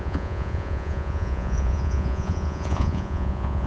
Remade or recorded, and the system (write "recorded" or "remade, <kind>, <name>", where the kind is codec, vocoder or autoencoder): remade, vocoder, Vocos